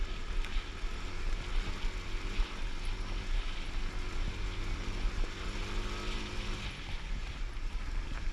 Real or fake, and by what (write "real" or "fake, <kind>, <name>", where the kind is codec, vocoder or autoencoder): real